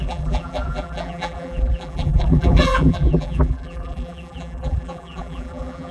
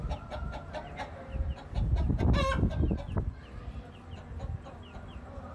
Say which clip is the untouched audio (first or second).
second